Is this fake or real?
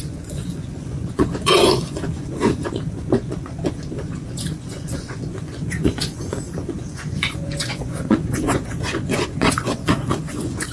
fake